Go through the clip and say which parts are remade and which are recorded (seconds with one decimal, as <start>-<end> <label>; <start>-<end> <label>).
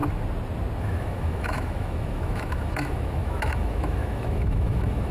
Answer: 0.0-0.8 recorded; 0.8-5.1 remade